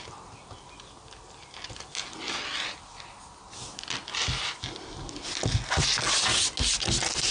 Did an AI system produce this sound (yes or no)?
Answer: no